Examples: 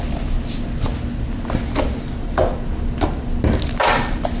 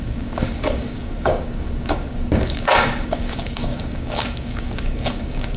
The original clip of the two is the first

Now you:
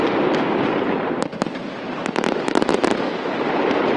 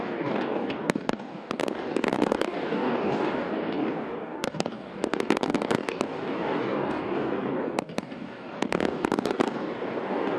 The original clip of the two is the first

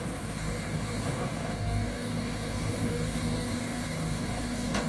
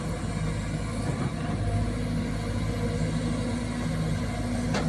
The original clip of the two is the second